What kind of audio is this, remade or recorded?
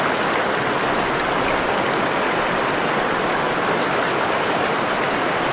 recorded